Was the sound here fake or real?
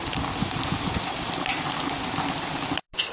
real